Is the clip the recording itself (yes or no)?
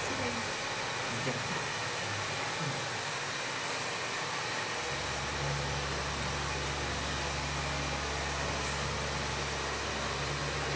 yes